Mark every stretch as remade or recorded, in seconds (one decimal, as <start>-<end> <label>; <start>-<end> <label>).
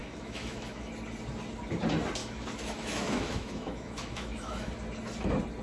0.0-0.9 remade; 0.9-2.2 recorded; 2.2-4.7 remade; 4.7-5.6 recorded